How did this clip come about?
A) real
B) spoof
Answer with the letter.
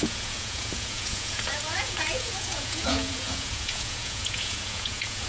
B